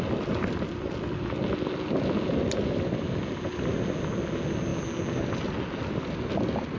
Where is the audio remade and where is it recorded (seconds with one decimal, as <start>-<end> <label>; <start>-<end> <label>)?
0.0-6.8 recorded